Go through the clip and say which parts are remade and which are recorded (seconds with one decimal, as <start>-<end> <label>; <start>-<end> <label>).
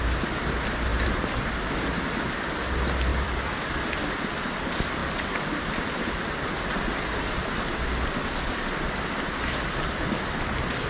0.0-0.9 recorded; 0.9-1.5 remade; 1.5-3.1 recorded; 3.1-3.7 remade; 3.7-10.9 recorded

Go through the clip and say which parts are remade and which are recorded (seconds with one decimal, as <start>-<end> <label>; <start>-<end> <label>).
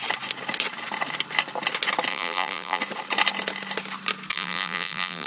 0.0-2.1 recorded; 2.1-2.8 remade; 2.8-4.3 recorded; 4.3-5.3 remade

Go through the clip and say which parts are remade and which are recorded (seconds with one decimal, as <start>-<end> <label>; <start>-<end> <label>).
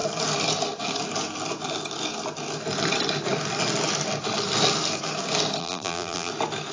0.0-5.6 recorded; 5.6-6.3 remade; 6.3-6.7 recorded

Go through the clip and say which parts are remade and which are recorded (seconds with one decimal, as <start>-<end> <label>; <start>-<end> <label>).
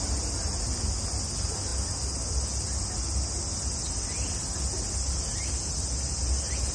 0.0-6.7 recorded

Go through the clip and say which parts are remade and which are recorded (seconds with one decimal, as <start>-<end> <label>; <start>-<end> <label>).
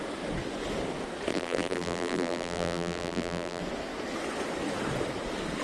0.0-1.3 recorded; 1.3-3.6 remade; 3.6-5.6 recorded